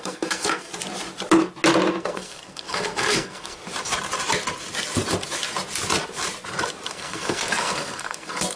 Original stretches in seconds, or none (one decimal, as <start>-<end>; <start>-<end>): 0.7-1.9; 3.6-6.9